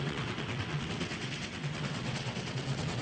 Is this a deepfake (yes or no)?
yes